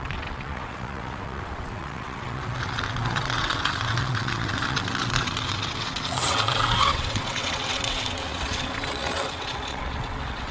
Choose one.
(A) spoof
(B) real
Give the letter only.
A